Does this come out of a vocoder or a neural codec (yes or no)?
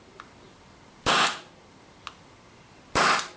no